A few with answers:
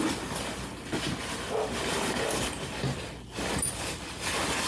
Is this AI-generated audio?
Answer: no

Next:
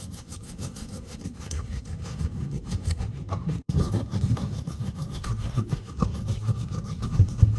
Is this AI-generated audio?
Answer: yes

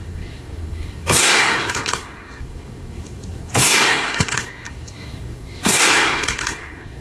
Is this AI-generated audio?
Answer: yes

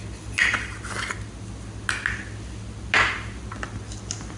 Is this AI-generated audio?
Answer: no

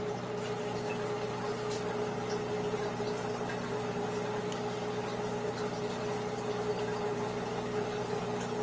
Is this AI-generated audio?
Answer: no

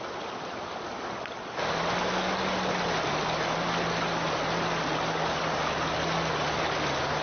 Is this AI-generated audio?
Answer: no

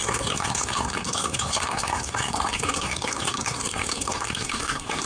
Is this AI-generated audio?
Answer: yes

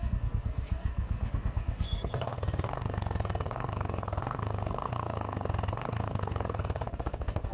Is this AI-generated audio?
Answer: yes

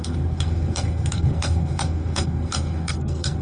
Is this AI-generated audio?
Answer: yes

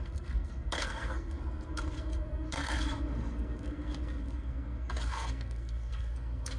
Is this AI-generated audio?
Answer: yes